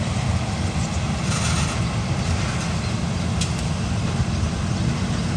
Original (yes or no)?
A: yes